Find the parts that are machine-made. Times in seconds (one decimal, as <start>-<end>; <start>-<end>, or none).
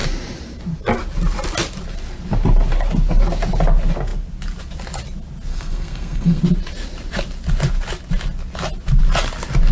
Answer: 5.5-6.4